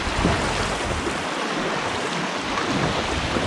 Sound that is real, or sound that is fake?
real